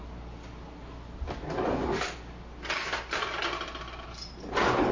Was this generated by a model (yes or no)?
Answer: no